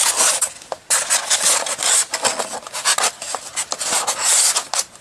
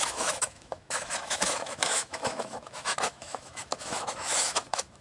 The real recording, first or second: first